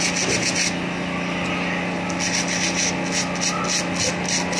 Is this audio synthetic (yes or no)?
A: no